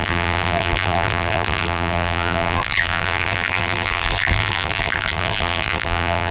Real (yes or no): no